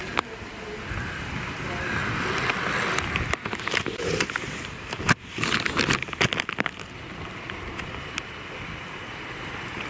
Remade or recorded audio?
recorded